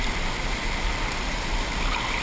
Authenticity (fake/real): real